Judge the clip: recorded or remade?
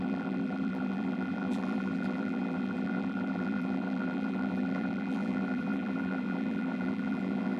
remade